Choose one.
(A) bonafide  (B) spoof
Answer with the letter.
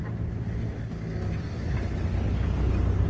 A